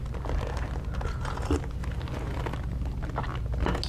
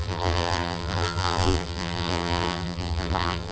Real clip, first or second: first